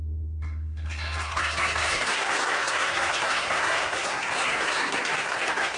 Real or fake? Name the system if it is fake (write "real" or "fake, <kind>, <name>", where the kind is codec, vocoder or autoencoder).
fake, codec, SNAC